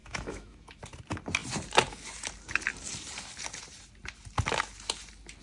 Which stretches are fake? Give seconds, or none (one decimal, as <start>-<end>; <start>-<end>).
0.0-0.8